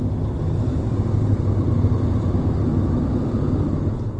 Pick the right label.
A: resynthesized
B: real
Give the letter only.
B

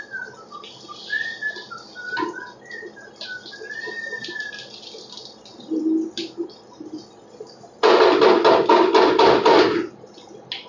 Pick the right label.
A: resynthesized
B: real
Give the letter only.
B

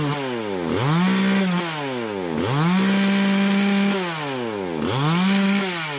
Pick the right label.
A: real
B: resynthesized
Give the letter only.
A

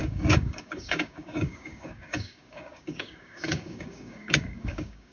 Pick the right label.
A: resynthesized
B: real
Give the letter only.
A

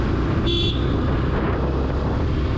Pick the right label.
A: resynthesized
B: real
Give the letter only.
B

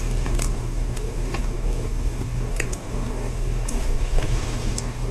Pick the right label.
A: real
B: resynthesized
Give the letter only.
B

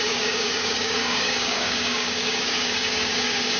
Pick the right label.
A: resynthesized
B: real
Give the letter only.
A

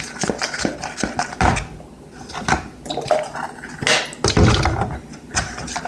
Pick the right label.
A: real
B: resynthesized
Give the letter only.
A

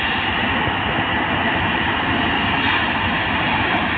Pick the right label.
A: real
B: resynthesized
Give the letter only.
A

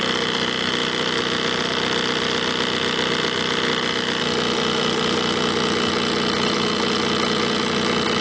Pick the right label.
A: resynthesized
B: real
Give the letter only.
B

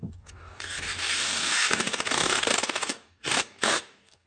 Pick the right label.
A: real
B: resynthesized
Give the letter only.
B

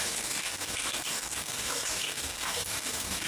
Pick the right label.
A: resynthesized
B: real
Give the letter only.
A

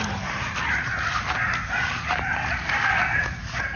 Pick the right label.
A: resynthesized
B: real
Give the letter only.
B